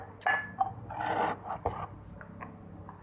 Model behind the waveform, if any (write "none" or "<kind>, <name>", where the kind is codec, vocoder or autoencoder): none